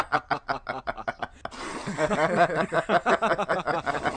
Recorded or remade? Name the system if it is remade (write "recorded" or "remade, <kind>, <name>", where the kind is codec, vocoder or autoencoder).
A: recorded